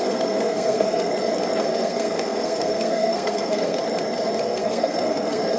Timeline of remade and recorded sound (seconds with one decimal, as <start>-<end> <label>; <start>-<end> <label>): 0.0-1.1 remade; 1.1-1.6 recorded; 1.6-3.8 remade; 3.8-4.4 recorded; 4.4-5.6 remade